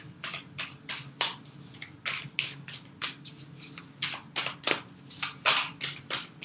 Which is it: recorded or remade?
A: recorded